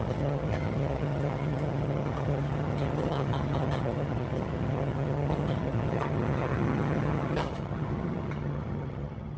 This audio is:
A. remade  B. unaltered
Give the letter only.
A